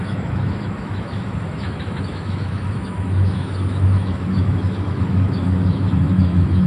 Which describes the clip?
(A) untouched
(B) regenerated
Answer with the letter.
B